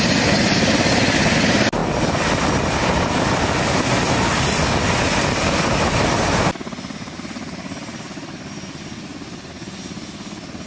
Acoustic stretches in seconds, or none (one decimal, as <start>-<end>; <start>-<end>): 0.0-10.7